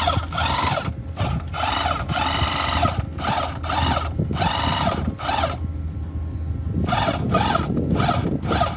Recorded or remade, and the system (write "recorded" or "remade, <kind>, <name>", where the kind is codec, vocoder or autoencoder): recorded